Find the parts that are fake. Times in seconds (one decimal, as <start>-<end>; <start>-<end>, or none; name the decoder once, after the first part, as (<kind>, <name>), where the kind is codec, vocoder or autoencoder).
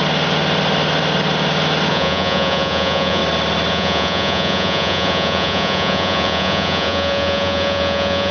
1.9-3.2 (vocoder, Vocos); 3.7-8.3